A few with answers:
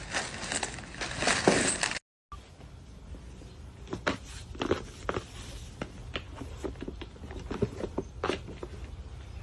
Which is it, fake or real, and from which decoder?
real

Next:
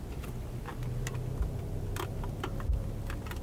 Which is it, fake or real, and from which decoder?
real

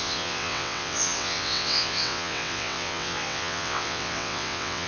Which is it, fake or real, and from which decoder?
fake, vocoder, WaveNeXt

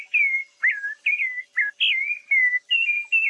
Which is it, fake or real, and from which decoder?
real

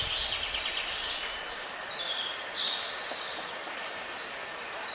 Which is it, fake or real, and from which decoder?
real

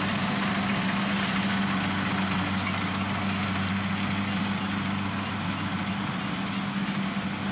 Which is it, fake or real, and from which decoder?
real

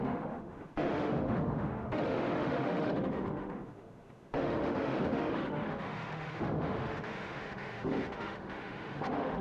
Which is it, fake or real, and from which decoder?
fake, autoencoder, DAC-VAE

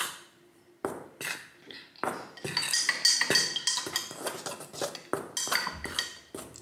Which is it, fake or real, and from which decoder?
real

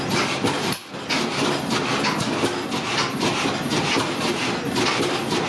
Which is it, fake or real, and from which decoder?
real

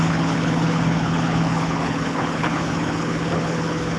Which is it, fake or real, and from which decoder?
fake, codec, HILCodec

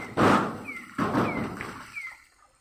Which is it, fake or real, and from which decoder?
real